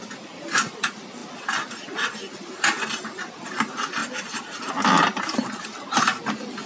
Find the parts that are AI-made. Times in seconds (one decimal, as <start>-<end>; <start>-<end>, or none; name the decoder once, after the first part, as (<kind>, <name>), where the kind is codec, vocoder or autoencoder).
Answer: none